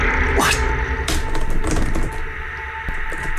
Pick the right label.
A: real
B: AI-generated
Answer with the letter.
A